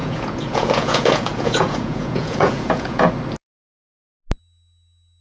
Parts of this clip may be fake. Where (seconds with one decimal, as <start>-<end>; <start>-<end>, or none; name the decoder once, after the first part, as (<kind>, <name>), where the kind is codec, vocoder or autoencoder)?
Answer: 0.0-3.1 (vocoder, Vocos)